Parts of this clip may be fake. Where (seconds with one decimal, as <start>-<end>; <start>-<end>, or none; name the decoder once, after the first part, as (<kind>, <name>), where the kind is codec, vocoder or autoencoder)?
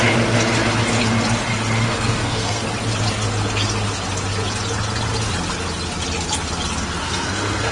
1.9-2.6 (codec, SNAC); 7.0-7.7